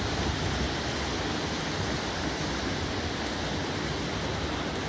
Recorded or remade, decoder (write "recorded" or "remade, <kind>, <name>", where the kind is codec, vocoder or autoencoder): recorded